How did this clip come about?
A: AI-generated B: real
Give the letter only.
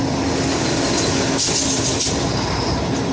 B